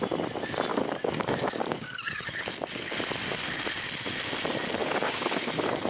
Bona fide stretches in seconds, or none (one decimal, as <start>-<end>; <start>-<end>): 0.0-0.7; 2.4-4.8; 5.5-5.9